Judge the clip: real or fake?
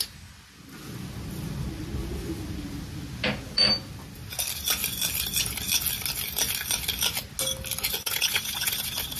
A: real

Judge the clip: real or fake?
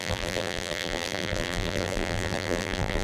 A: fake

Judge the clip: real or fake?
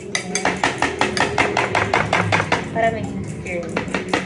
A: real